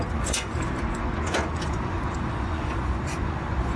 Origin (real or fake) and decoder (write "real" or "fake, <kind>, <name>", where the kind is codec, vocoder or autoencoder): fake, vocoder, Vocos